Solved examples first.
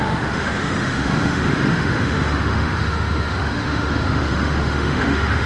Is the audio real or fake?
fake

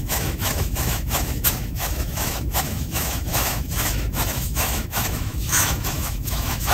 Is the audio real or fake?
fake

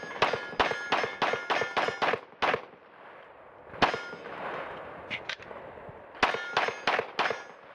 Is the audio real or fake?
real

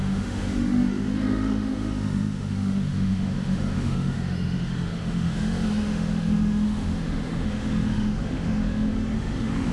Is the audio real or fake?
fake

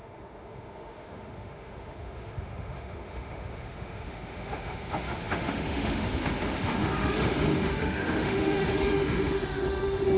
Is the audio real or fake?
fake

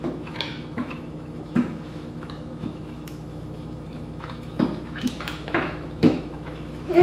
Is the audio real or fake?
fake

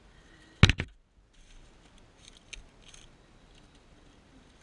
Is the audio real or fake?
real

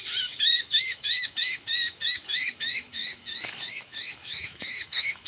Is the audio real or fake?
fake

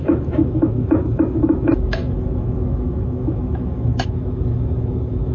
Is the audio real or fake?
fake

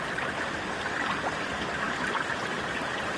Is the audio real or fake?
real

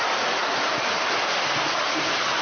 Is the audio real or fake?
real